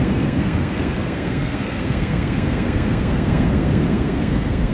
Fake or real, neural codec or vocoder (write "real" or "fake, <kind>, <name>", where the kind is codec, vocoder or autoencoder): fake, codec, SNAC